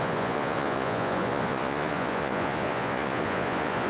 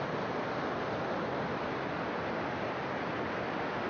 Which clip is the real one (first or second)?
second